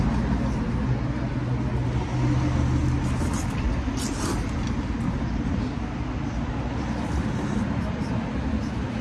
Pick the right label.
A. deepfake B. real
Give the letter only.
B